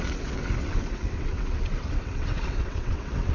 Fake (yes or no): yes